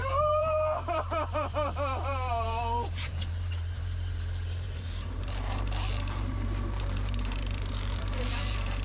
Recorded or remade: remade